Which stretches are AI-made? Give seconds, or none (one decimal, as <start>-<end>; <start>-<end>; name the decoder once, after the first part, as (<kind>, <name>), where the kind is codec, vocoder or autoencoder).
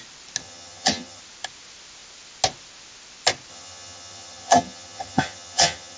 0.4-1.2 (vocoder, HiFi-GAN); 3.5-6.0